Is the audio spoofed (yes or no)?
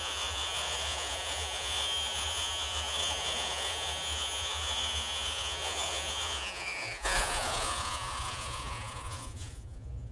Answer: yes